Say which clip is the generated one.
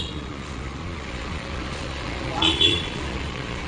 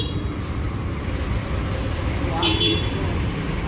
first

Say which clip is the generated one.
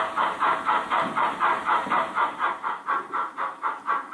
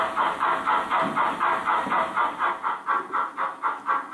first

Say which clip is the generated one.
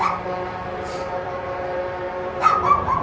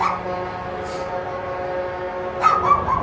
first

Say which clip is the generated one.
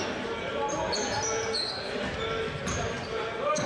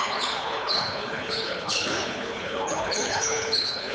second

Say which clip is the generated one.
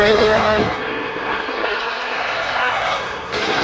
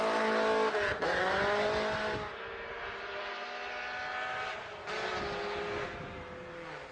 first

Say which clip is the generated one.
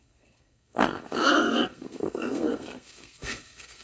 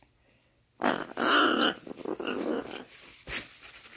first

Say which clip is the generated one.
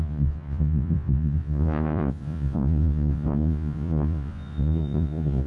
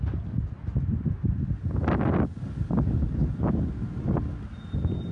first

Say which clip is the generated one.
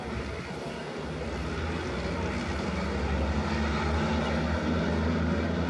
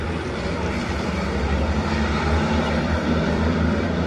second